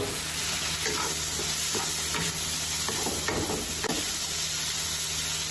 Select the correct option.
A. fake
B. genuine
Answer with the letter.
B